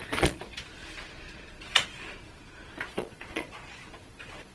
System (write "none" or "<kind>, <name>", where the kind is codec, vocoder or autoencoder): vocoder, Vocos